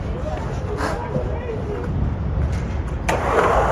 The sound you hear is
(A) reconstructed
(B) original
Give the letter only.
B